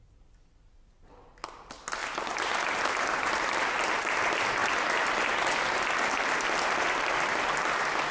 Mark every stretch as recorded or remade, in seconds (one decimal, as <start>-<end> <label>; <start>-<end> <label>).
0.0-8.1 recorded